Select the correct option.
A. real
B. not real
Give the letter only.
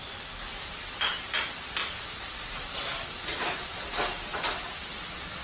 A